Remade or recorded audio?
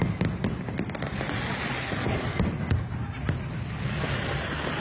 recorded